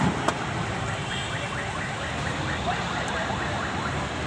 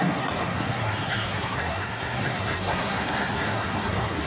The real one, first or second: first